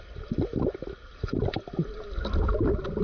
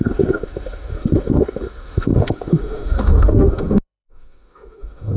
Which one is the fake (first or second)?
second